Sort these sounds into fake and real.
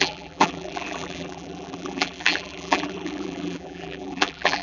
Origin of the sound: fake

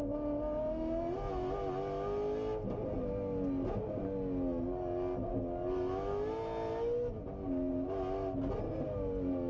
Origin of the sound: real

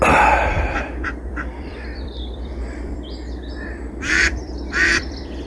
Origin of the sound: fake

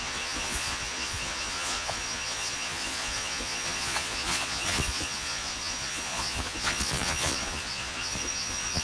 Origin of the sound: fake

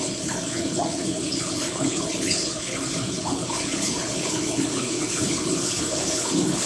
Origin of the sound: fake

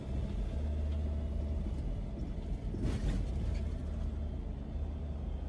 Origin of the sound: real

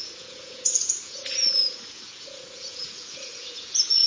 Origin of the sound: fake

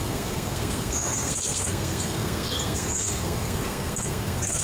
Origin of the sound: fake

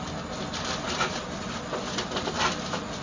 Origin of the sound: real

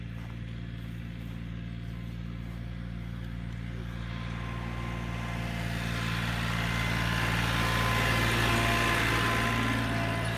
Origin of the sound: real